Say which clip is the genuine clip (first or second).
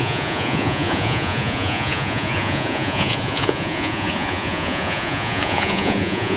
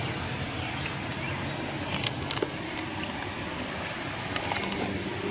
second